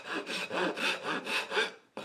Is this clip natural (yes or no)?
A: yes